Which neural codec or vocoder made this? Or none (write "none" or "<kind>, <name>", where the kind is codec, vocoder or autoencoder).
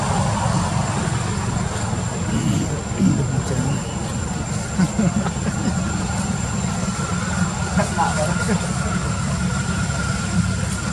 none